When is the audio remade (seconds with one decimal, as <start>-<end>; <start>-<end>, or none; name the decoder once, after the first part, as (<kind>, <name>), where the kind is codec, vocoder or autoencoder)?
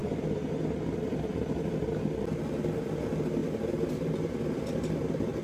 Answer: none